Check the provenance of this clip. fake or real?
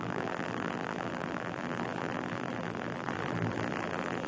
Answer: fake